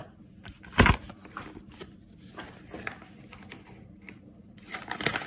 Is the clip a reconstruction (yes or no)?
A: yes